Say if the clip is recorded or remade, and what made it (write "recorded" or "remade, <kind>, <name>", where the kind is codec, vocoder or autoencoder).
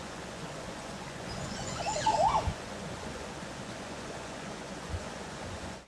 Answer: remade, vocoder, Vocos